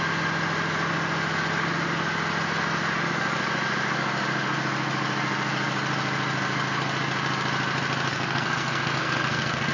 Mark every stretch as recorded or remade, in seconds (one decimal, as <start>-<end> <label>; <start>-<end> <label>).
0.0-8.1 recorded; 8.1-9.7 remade